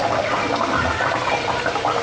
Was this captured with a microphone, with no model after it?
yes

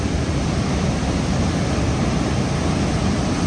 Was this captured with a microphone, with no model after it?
yes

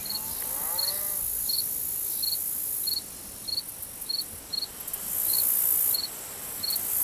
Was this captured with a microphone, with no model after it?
yes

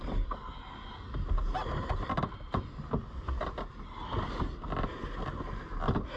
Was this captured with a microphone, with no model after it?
yes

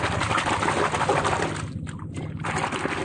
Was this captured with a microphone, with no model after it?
yes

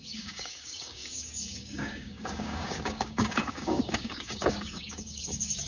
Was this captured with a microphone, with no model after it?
no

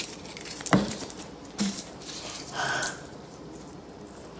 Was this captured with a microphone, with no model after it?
no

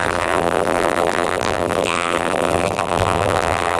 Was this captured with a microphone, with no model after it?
no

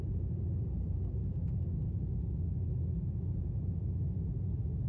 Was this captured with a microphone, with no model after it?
yes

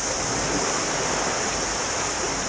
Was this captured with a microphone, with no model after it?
yes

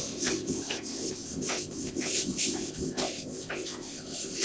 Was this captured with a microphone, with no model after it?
no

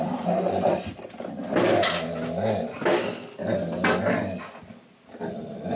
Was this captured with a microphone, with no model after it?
yes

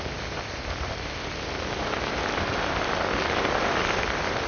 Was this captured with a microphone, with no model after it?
yes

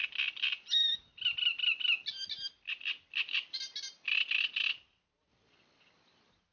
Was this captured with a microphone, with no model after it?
yes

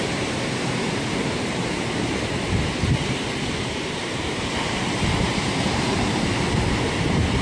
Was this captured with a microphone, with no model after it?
no